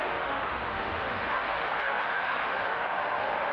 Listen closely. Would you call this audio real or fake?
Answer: fake